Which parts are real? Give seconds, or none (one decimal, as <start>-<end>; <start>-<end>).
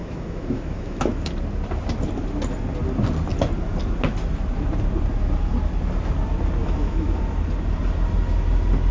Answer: 1.3-6.6; 7.2-8.9